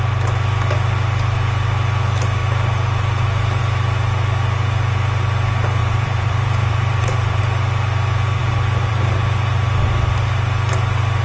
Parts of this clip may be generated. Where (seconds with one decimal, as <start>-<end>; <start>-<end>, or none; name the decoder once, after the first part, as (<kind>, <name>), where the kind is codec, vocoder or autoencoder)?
5.8-7.4 (vocoder, BigVGAN v2)